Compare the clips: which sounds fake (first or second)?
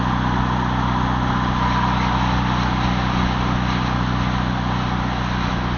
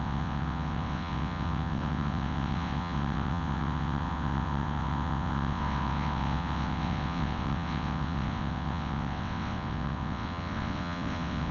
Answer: second